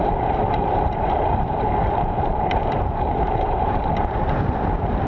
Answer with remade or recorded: remade